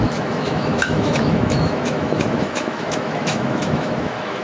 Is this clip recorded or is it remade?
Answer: remade